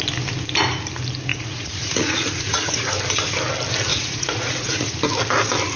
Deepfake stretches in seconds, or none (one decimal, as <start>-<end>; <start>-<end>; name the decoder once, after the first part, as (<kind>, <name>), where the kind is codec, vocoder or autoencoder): 1.3-2.8 (vocoder, Vocos); 3.9-5.0

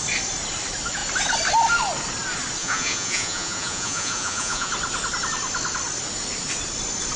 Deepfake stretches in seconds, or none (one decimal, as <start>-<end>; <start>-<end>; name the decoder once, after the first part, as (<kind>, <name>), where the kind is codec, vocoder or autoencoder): 2.6-4.7 (vocoder, Vocos)

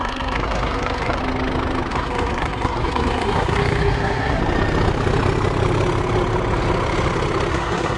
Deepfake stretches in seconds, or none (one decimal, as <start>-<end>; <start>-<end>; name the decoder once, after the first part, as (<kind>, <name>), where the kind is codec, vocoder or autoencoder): 0.0-1.2 (codec, SNAC); 1.9-4.4; 7.5-8.0

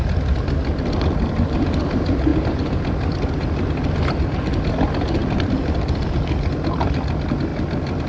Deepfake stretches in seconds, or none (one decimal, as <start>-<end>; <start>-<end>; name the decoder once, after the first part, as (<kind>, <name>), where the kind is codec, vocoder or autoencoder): 2.3-4.4 (vocoder, BigVGAN v2); 5.2-6.2

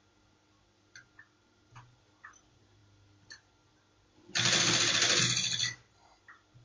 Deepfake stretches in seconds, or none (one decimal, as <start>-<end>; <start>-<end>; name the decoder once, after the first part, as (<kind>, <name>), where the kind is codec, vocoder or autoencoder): none

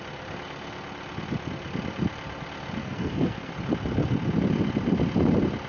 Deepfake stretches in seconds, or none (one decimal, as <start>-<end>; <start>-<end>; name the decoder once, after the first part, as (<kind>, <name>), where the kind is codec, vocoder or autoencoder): 2.8-3.5 (codec, SNAC)

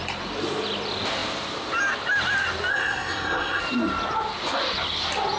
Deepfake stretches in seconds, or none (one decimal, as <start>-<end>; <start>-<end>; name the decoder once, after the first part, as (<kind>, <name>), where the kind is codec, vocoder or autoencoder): 2.7-3.6 (codec, SNAC)